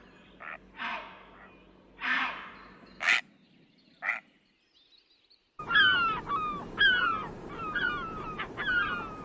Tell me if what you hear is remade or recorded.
recorded